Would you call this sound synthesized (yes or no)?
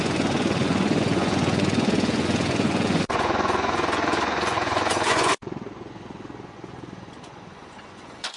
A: yes